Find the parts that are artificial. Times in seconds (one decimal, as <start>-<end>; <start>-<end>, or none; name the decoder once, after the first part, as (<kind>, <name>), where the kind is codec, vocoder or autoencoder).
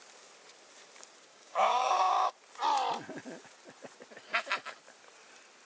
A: 1.3-2.3 (codec, DAC)